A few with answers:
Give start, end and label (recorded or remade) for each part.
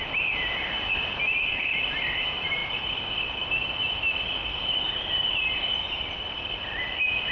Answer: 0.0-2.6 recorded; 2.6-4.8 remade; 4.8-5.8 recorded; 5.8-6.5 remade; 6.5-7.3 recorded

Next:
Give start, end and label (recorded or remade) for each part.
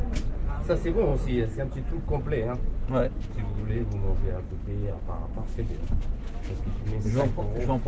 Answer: 0.0-7.9 recorded